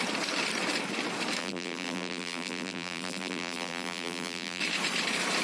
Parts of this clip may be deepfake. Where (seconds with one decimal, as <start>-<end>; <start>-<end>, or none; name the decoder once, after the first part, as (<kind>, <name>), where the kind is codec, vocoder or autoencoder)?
1.4-4.6 (vocoder, BigVGAN v2)

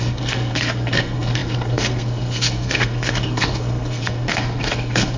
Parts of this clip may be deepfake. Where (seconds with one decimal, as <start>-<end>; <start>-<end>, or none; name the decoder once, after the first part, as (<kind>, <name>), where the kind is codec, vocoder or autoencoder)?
0.0-5.2 (codec, SNAC)